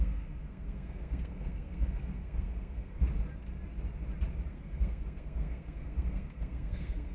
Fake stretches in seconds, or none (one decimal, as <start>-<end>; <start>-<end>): 0.0-3.0; 4.5-7.1